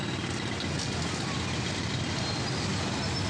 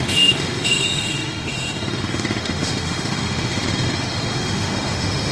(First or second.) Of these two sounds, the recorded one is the first